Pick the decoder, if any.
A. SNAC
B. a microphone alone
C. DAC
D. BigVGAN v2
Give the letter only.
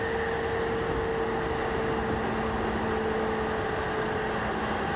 B